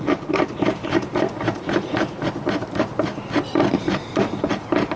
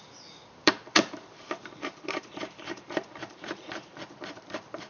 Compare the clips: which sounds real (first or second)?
first